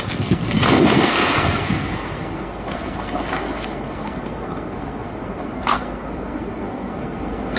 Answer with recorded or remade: remade